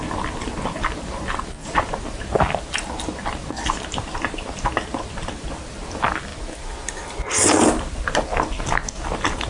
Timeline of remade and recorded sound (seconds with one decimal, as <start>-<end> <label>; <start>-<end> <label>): 0.0-9.5 recorded